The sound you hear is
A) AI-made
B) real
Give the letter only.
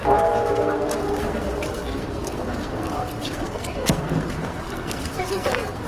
A